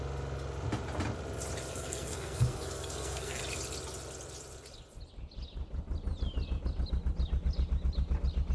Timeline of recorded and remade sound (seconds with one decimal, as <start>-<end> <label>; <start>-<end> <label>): 0.0-1.7 recorded; 1.7-3.4 remade; 3.4-8.5 recorded